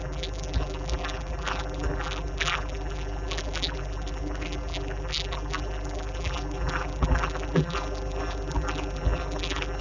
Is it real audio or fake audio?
fake